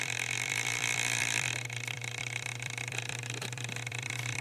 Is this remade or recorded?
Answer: remade